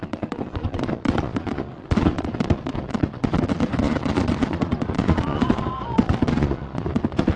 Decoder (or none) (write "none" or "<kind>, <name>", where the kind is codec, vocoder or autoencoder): vocoder, Vocos